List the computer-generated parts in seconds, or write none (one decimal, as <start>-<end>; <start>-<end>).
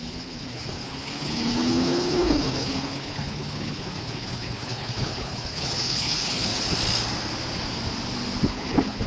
0.0-6.5; 8.5-9.1